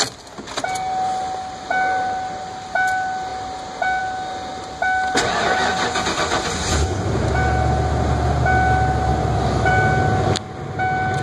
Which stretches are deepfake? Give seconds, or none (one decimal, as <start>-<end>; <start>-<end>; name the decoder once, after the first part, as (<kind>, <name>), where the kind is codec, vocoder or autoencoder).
none